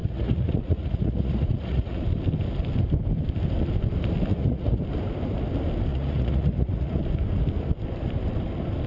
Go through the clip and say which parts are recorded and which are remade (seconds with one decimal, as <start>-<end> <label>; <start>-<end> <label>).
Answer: 0.0-2.0 remade; 2.0-4.3 recorded; 4.3-4.8 remade; 4.8-5.9 recorded; 5.9-7.0 remade; 7.0-8.9 recorded